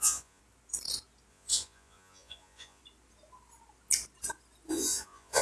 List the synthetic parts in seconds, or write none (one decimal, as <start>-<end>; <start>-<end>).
0.0-0.4; 1.3-2.8; 4.7-5.4